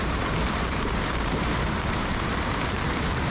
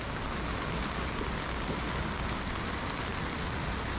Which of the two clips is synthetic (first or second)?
first